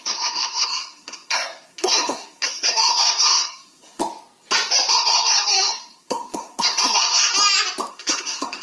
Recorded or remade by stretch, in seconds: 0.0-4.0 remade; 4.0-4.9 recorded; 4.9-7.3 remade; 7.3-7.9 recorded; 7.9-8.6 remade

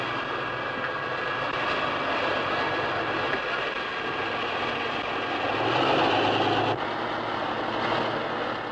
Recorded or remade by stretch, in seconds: 0.0-8.7 recorded

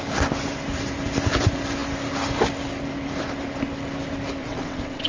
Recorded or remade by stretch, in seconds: 0.0-4.4 recorded; 4.4-5.1 remade